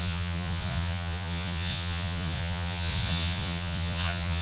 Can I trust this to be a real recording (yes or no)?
no